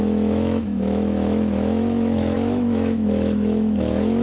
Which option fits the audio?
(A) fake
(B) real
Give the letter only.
A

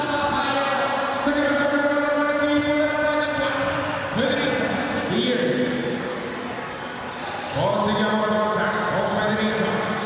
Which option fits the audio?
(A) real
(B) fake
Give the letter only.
A